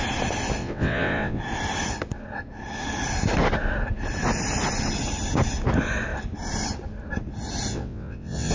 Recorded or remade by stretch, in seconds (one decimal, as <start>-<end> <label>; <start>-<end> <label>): 0.0-0.6 recorded; 0.6-1.4 remade; 1.4-7.7 recorded; 7.7-8.5 remade